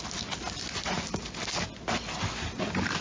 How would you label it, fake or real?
real